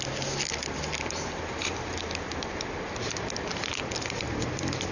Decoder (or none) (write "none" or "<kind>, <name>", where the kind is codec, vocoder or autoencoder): none